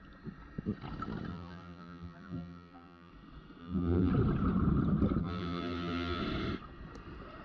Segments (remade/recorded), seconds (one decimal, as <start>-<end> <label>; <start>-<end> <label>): 0.0-1.3 recorded; 1.3-3.1 remade; 3.1-3.6 recorded; 3.6-4.1 remade; 4.1-5.2 recorded; 5.2-6.2 remade; 6.2-7.4 recorded